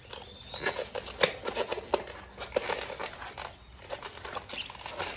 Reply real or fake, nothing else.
real